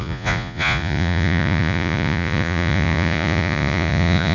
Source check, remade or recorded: remade